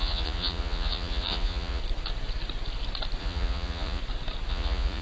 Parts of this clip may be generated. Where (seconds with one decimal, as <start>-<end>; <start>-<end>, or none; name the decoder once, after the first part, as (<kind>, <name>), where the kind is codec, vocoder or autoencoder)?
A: 0.0-1.8 (vocoder, Vocos); 3.2-4.0; 4.5-5.0